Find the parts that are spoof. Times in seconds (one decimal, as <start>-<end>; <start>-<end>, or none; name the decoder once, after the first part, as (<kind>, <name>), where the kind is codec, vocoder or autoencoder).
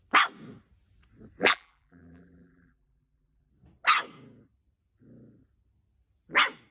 1.4-3.5 (vocoder, BigVGAN v2)